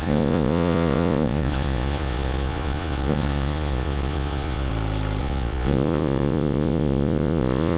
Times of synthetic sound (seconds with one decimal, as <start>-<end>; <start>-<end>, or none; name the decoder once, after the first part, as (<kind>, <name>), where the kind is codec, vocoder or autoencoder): 0.0-4.7 (vocoder, Vocos); 5.2-7.8